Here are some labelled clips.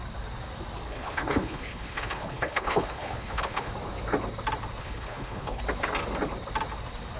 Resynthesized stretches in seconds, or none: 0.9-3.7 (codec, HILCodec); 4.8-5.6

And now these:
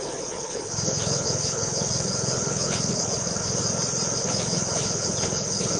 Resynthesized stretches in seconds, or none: 0.0-3.6 (codec, HILCodec); 4.2-5.8